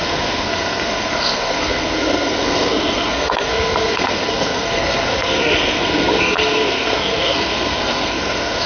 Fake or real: fake